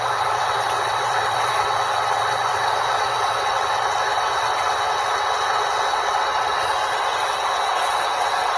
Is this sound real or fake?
fake